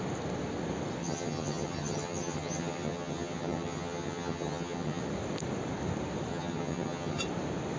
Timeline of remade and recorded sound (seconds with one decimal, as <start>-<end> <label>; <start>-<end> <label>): 0.0-1.0 recorded; 1.0-5.0 remade; 5.0-6.3 recorded; 6.3-7.2 remade; 7.2-7.8 recorded